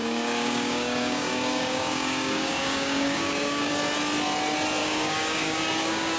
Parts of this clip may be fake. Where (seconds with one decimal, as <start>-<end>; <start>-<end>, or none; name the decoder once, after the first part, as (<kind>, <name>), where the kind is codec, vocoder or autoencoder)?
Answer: 0.0-3.7 (codec, DAC); 4.8-6.2